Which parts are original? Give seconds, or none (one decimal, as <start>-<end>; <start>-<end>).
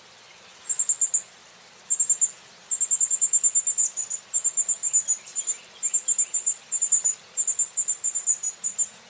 0.0-9.1